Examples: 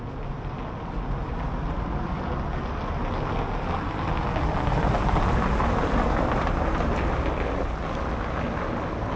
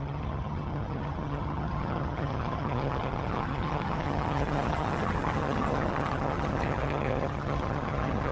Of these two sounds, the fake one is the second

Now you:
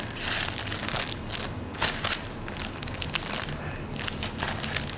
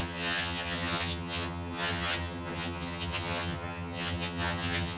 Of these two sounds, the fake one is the second